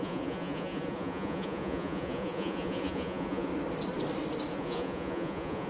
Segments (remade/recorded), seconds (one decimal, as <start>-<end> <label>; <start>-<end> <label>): 0.0-3.5 remade; 3.5-4.5 recorded; 4.5-5.7 remade